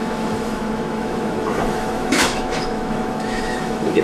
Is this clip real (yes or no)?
no